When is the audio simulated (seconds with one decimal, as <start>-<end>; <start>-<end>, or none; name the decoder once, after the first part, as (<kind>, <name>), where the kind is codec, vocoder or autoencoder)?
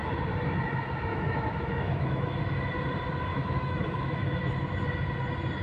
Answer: 1.1-2.4 (autoencoder, DAC-VAE); 3.3-4.5